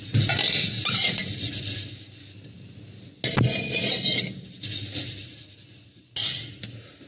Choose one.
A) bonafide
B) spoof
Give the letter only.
A